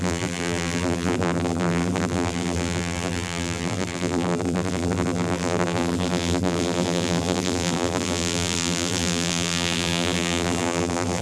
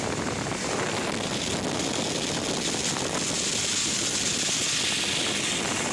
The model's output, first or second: first